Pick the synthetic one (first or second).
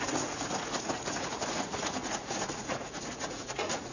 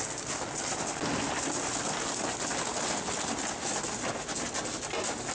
first